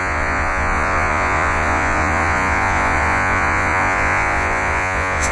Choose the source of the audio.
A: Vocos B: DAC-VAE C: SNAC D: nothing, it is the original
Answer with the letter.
A